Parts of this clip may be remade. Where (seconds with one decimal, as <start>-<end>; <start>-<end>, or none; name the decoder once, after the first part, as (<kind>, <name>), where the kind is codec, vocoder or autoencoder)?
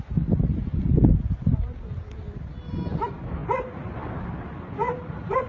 none